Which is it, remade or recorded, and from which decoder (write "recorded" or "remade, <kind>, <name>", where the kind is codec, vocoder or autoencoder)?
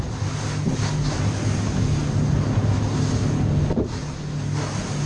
recorded